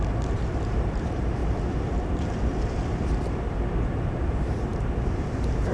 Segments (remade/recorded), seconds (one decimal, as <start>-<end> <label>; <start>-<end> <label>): 0.0-1.4 remade; 1.4-2.0 recorded; 2.0-5.7 remade